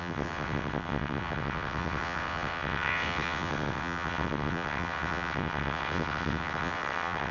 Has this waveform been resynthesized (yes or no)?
yes